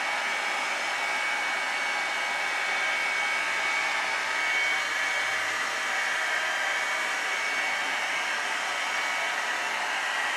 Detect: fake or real real